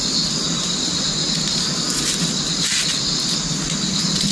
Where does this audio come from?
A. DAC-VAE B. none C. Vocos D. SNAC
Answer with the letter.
B